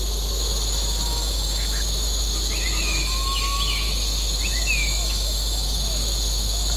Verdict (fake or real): fake